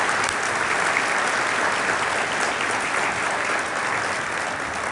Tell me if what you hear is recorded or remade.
recorded